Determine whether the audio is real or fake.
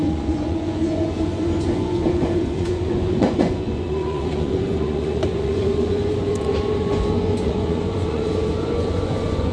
fake